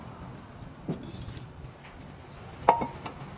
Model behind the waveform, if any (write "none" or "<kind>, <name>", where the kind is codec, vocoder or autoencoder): none